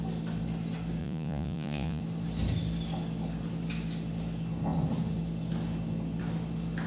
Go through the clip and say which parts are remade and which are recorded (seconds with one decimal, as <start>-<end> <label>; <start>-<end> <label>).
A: 0.0-1.0 recorded; 1.0-2.0 remade; 2.0-6.9 recorded